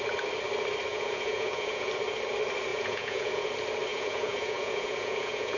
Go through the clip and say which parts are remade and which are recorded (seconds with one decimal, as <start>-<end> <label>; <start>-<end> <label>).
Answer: 0.0-0.9 recorded; 0.9-1.9 remade; 1.9-2.7 recorded; 2.7-3.5 remade; 3.5-3.9 recorded; 3.9-5.6 remade